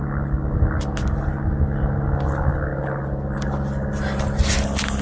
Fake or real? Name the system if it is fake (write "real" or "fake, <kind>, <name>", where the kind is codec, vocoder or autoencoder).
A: real